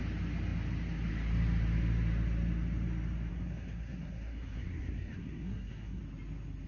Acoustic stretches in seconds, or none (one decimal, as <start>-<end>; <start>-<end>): 0.0-3.3; 6.0-6.7